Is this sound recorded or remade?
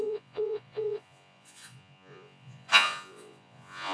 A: remade